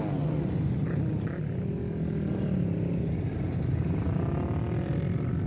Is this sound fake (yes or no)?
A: no